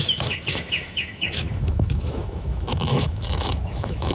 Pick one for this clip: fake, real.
fake